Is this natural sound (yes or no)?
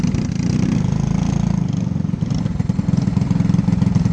yes